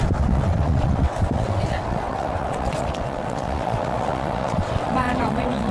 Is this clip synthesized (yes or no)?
yes